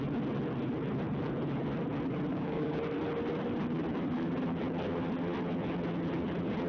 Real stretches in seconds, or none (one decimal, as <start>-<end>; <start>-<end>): 0.0-2.3; 2.8-6.7

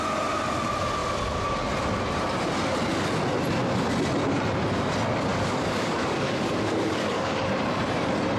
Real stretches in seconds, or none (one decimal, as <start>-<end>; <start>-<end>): 0.0-5.3; 7.5-8.4

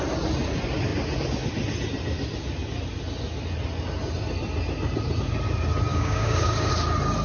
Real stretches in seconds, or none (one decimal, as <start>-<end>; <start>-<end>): 0.0-5.9; 6.7-7.2

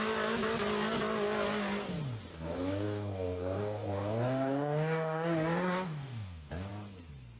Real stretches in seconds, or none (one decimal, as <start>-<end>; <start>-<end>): 0.0-2.3; 6.7-7.4

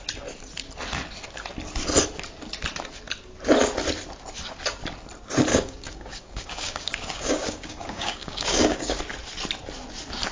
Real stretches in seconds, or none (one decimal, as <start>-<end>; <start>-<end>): 0.0-5.5; 9.0-10.3

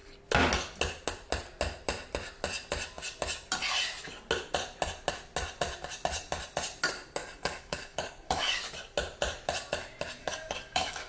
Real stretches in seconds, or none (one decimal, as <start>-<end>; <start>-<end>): 0.0-7.2; 8.6-10.2

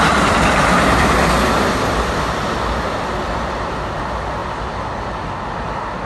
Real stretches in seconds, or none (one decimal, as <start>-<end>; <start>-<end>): 0.0-6.1

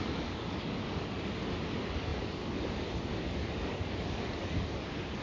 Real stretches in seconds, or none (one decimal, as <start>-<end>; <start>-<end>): none